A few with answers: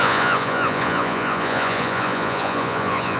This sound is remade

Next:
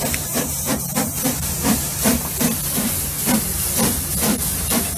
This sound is remade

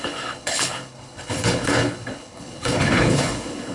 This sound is remade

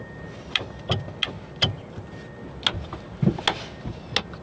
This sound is recorded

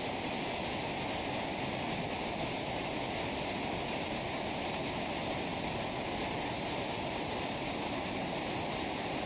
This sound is recorded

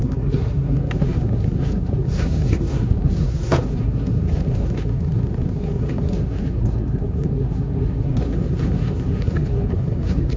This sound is remade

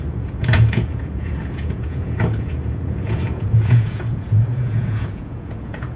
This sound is remade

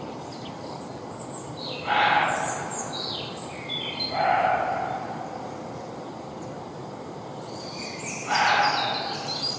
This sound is remade